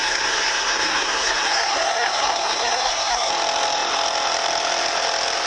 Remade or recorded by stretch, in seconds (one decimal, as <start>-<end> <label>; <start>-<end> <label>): 0.0-3.3 remade; 3.3-5.5 recorded